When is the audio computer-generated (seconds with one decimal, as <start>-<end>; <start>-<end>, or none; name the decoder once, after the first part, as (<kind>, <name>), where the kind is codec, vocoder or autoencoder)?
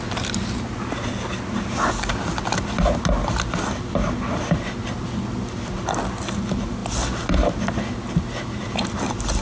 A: none